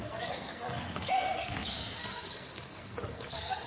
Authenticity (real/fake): fake